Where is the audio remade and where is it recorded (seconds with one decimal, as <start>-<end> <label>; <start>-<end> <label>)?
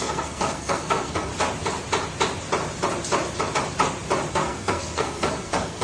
0.0-1.3 remade; 1.3-4.3 recorded; 4.3-5.8 remade